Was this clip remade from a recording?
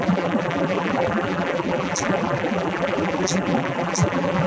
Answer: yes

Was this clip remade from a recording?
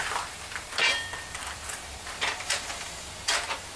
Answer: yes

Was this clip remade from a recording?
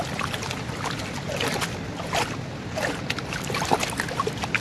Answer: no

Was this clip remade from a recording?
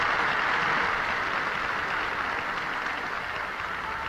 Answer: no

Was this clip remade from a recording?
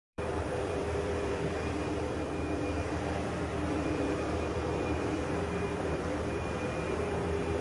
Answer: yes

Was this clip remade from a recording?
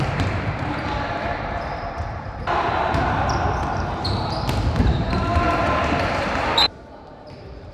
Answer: yes